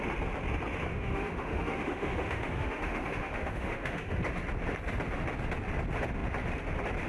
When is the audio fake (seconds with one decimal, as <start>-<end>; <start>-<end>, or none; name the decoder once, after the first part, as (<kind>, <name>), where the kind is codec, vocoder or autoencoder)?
0.9-4.2 (autoencoder, DAC-VAE)